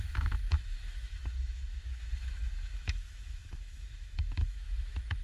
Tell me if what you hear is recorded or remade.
remade